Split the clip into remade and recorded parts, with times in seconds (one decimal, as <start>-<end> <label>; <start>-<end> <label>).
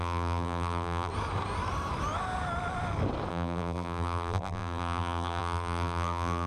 0.0-1.1 remade; 1.1-3.3 recorded; 3.3-6.5 remade